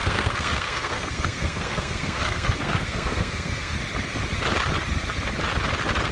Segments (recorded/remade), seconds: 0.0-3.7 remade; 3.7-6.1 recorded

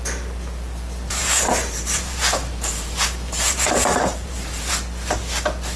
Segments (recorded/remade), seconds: 0.0-1.2 recorded; 1.2-4.7 remade; 4.7-5.8 recorded

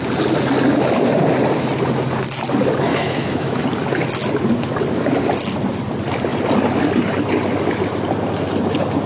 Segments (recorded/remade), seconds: 0.0-2.9 recorded; 2.9-3.6 remade; 3.6-9.1 recorded

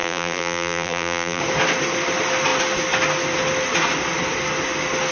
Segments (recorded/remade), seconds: 0.0-1.4 remade; 1.4-5.1 recorded